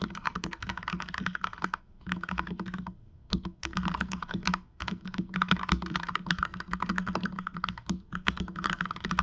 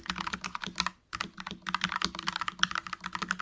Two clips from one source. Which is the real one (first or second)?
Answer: second